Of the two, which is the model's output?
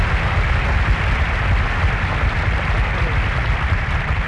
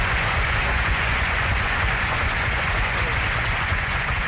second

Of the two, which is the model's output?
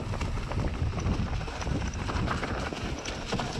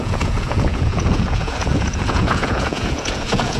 second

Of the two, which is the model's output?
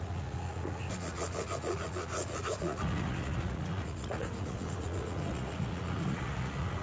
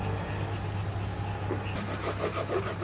first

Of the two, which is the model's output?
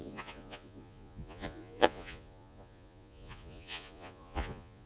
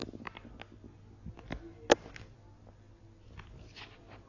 first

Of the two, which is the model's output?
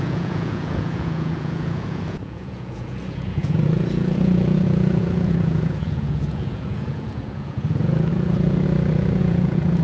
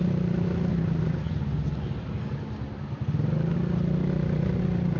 first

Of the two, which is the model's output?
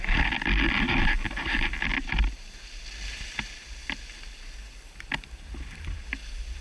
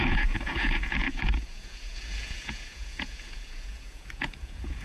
second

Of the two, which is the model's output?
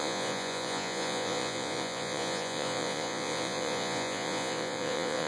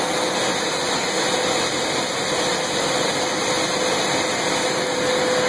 first